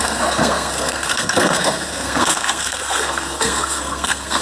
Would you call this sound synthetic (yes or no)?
yes